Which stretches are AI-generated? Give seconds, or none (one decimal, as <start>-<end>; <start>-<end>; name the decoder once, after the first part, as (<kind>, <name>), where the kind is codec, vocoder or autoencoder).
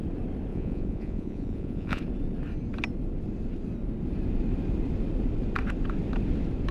0.5-2.0 (vocoder, Vocos)